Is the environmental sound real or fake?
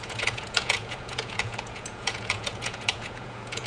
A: fake